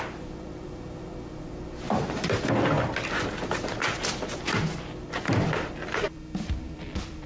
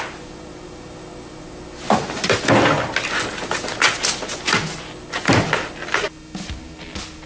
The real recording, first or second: second